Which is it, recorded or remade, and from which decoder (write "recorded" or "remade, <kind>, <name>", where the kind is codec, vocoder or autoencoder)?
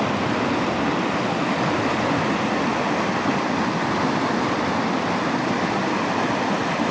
recorded